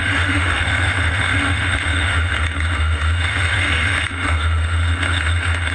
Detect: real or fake fake